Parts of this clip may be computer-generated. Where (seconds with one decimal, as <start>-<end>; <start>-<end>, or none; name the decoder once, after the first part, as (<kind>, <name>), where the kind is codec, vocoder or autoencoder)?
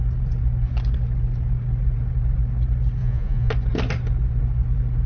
3.0-3.5 (vocoder, Vocos)